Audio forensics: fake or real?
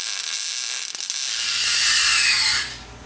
real